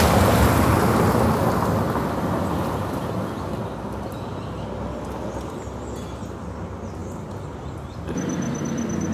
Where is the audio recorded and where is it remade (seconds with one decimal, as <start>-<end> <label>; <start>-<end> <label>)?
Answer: 0.0-7.0 recorded; 7.0-8.6 remade; 8.6-9.1 recorded